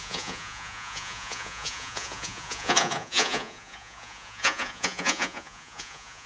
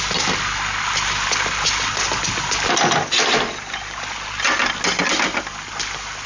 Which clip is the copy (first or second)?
first